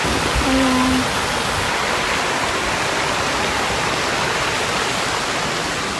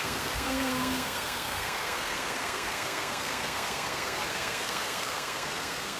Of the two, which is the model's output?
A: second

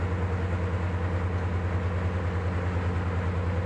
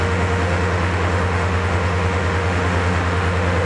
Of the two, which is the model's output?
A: second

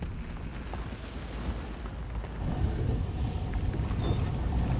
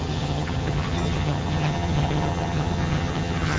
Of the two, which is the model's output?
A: second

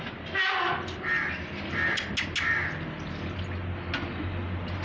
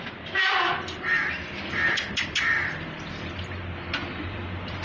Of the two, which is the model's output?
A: second